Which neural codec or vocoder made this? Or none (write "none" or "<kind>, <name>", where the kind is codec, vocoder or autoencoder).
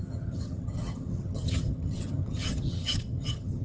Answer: vocoder, HiFi-GAN